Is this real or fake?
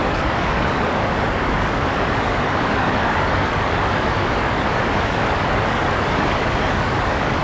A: fake